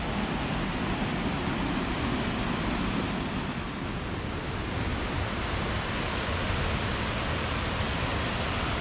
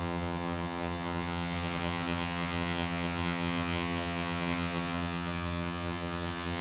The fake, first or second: second